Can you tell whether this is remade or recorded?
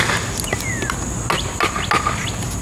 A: recorded